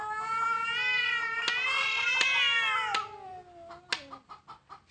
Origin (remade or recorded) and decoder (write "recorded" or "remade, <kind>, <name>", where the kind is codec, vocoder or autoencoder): recorded